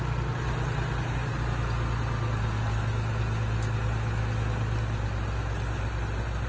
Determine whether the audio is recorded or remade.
recorded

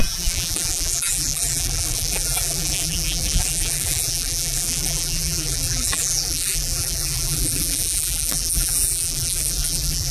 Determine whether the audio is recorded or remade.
remade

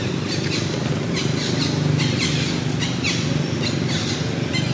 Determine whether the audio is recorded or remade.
recorded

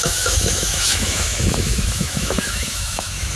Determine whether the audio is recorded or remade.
remade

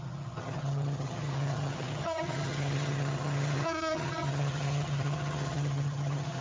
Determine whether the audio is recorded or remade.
remade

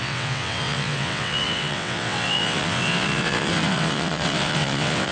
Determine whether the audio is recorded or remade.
remade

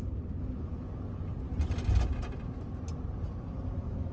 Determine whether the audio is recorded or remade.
recorded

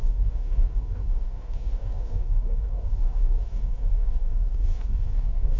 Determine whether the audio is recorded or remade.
remade